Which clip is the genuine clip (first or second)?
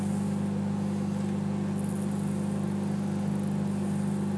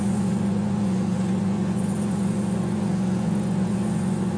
first